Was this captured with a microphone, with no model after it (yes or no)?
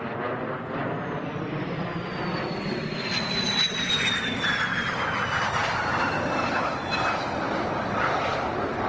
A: yes